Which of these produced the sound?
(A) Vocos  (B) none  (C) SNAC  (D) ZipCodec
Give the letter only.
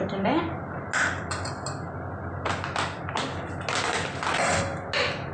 B